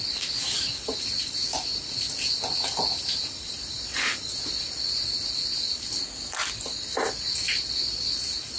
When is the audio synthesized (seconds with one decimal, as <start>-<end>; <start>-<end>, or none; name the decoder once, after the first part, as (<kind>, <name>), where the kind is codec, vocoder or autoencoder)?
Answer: none